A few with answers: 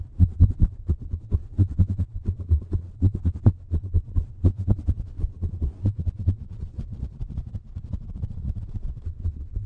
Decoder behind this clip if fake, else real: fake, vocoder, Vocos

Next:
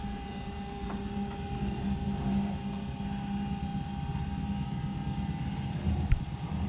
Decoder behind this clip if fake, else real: real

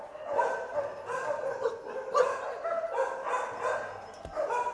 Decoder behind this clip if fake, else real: real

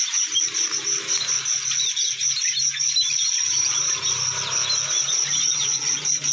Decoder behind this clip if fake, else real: real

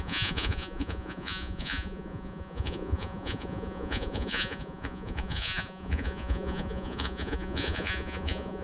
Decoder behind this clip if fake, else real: fake, vocoder, Vocos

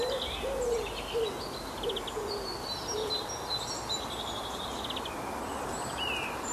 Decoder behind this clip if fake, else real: real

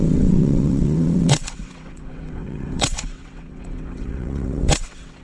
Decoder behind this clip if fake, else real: fake, vocoder, WaveNeXt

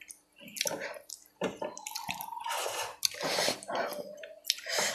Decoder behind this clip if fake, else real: real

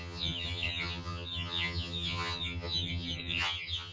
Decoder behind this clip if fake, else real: fake, vocoder, HiFi-GAN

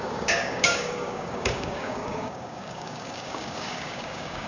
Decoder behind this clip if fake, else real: fake, codec, DAC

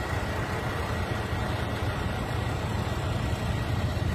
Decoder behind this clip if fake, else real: real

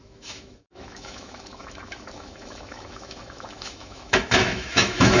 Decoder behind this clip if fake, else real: fake, autoencoder, DAC-VAE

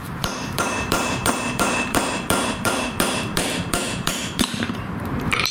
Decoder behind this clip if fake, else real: fake, vocoder, BigVGAN v2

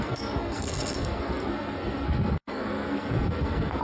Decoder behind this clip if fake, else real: fake, codec, SNAC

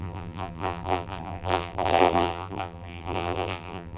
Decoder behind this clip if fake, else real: fake, vocoder, BigVGAN v2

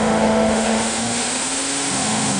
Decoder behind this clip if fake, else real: fake, autoencoder, DAC-VAE